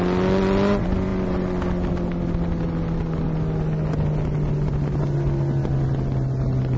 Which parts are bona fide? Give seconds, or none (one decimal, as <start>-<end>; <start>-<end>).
0.0-6.8